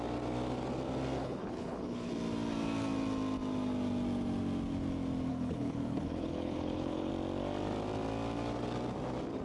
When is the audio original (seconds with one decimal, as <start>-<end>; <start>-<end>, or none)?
0.0-1.2; 2.1-5.3; 7.1-9.4